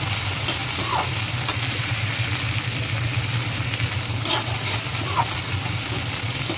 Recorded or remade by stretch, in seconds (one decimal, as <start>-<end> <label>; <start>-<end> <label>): 0.0-6.6 recorded